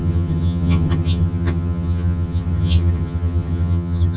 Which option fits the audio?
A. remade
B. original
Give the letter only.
A